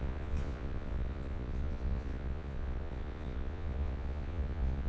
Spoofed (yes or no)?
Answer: yes